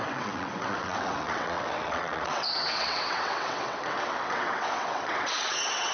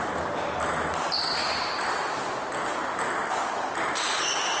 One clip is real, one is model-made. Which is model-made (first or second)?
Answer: first